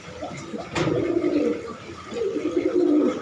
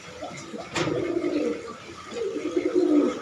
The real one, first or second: second